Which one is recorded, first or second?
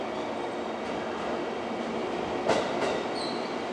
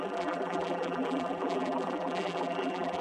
first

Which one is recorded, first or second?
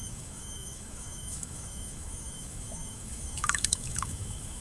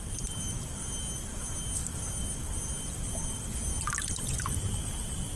second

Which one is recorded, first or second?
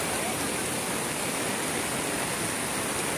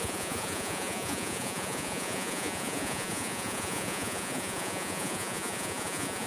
first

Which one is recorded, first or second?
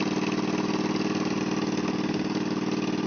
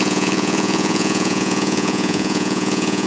first